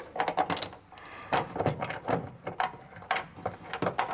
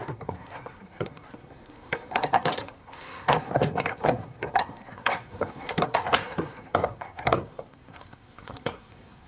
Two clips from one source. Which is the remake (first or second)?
second